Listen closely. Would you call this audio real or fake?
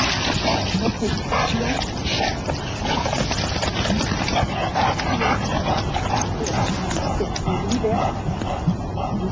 real